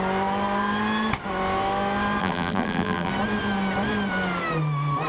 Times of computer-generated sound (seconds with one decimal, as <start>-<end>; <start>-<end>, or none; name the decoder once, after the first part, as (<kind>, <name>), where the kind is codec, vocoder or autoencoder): 2.2-3.1 (vocoder, BigVGAN v2)